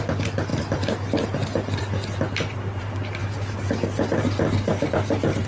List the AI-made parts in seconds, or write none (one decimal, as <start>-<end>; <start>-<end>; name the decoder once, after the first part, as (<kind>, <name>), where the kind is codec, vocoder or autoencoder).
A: none